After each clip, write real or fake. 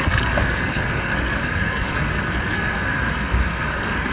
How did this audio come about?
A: fake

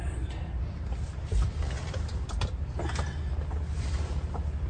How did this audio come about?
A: real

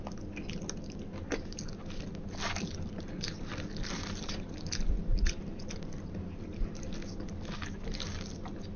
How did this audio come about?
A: real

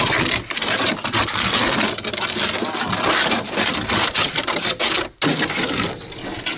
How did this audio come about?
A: real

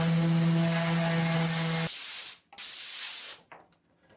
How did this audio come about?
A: real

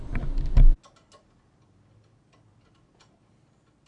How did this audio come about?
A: real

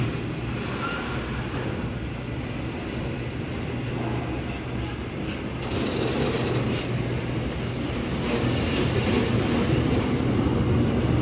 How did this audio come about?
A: real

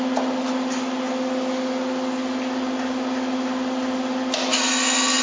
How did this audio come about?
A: real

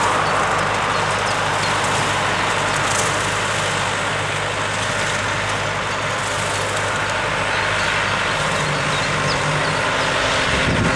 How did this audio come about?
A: real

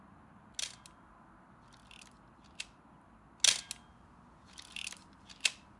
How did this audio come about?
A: real